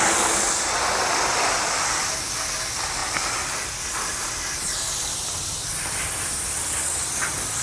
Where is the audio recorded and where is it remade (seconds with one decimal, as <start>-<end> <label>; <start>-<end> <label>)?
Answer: 0.0-7.6 recorded